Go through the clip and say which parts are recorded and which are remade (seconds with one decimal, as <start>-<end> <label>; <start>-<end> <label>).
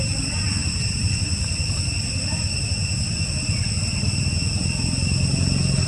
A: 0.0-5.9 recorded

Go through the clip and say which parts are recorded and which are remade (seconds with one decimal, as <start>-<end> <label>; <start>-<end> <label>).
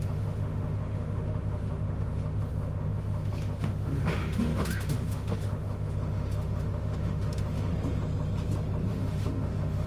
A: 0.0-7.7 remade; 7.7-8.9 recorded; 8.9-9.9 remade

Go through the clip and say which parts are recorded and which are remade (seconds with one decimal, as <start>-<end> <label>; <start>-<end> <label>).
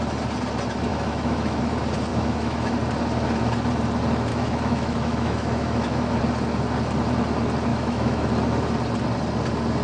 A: 0.0-0.9 recorded; 0.9-1.6 remade; 1.6-2.1 recorded; 2.1-2.7 remade; 2.7-4.3 recorded; 4.3-6.2 remade; 6.2-7.7 recorded; 7.7-8.3 remade; 8.3-9.8 recorded